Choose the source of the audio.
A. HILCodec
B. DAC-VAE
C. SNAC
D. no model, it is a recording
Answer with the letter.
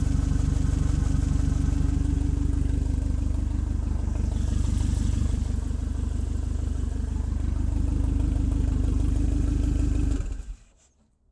D